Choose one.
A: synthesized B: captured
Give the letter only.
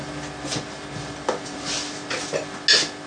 B